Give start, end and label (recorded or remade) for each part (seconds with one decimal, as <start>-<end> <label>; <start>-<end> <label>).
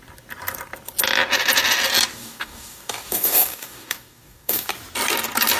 0.0-2.1 recorded; 2.1-4.7 remade; 4.7-5.6 recorded